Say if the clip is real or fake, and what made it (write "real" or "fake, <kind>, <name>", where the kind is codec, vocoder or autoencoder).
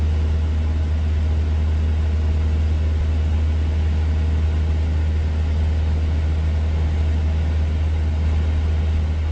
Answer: real